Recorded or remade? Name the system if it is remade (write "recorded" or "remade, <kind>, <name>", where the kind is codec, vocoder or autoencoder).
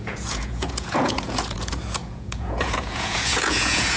remade, vocoder, Vocos